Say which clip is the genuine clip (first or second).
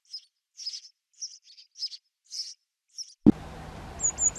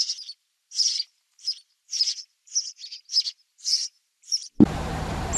first